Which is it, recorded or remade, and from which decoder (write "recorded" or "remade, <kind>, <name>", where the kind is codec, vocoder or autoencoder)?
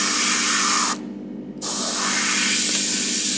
recorded